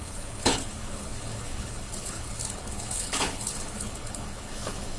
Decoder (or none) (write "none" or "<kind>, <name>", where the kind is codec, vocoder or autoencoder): codec, HILCodec